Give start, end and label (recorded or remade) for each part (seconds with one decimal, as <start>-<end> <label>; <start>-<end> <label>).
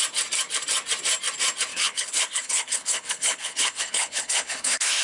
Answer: 0.0-1.7 recorded; 1.7-5.0 remade